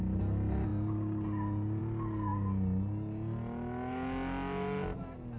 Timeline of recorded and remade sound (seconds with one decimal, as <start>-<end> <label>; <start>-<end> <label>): 0.0-5.4 recorded